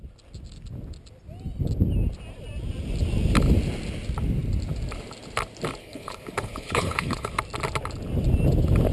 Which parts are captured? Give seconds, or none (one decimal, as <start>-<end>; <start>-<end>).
0.0-5.8; 7.3-8.9